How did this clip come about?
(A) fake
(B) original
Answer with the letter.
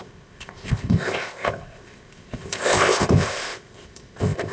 A